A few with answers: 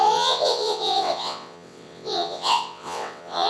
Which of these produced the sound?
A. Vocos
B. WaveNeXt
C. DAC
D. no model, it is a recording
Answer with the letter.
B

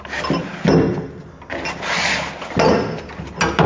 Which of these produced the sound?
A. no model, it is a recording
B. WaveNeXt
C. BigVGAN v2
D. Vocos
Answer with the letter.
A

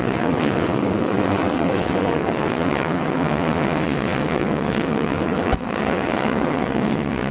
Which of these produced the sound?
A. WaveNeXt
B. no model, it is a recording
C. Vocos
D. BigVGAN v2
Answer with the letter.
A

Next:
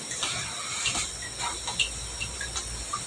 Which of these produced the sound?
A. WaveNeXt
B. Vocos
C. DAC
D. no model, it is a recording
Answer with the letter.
D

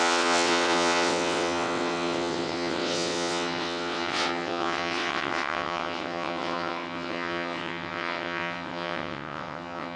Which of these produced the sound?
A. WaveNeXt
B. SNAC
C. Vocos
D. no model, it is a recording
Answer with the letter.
A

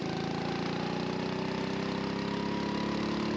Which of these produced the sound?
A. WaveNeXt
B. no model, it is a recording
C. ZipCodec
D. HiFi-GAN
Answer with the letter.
B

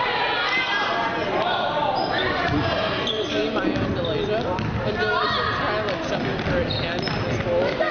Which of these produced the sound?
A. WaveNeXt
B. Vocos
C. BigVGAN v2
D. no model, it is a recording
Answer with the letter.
D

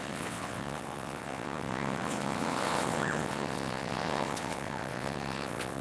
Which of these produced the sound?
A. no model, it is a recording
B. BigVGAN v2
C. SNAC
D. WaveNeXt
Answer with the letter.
D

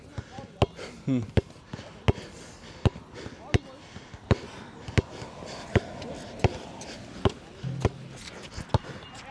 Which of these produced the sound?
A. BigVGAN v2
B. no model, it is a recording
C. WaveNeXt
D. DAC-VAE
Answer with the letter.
B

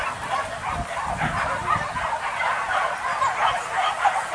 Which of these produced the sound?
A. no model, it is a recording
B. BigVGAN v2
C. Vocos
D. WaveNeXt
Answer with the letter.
A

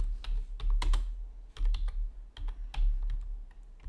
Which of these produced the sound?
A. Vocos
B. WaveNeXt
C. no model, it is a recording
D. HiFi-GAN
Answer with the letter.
C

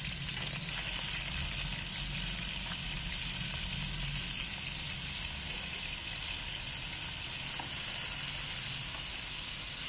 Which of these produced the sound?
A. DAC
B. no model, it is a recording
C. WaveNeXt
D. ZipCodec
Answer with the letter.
B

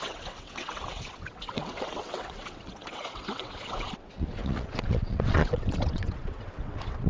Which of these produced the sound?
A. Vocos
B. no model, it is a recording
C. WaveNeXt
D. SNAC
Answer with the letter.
C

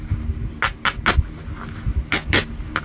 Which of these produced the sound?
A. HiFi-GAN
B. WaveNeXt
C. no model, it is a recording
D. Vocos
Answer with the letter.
C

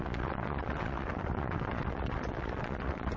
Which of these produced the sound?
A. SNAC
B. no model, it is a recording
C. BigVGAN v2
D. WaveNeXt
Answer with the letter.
D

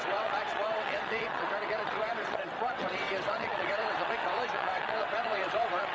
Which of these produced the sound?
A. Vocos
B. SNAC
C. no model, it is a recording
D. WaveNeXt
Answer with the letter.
D